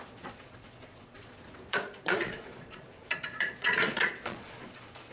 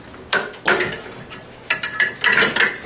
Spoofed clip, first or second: first